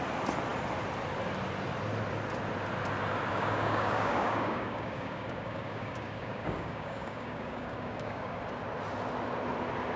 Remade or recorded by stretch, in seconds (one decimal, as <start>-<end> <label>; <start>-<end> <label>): 0.0-3.3 recorded; 3.3-8.4 remade; 8.4-10.0 recorded